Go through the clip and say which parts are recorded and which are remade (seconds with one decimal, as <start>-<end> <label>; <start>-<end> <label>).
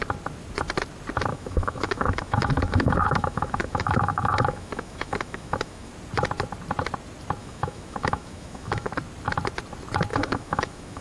0.0-1.3 recorded; 1.3-5.9 remade; 5.9-7.4 recorded; 7.4-8.9 remade; 8.9-10.1 recorded; 10.1-11.0 remade